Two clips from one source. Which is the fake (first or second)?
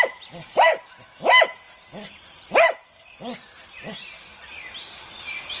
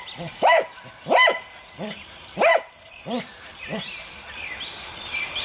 second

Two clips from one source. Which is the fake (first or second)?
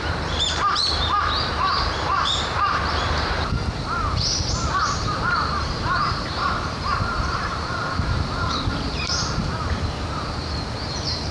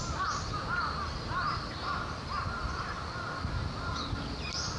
first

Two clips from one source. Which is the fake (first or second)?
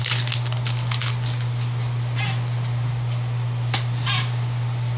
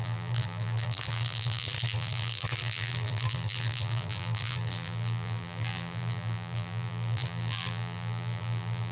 second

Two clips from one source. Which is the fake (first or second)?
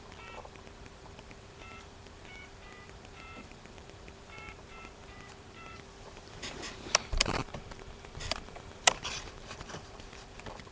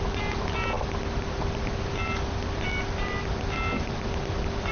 first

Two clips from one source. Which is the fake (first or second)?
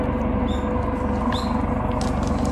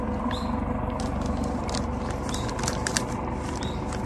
second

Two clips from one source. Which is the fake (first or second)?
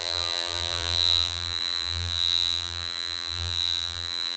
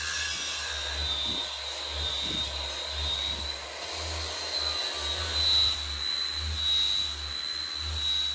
first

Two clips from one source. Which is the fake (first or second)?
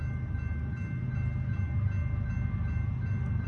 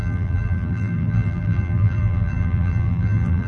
second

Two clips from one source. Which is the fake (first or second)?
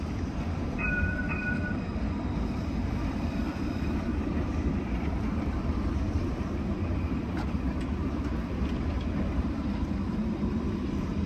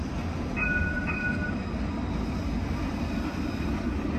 first